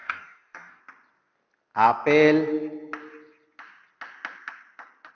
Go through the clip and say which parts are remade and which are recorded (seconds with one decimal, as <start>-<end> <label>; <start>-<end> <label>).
0.0-0.8 remade; 0.8-5.1 recorded